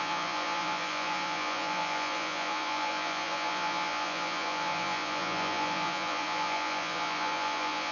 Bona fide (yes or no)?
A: no